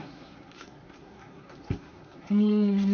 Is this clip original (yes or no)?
no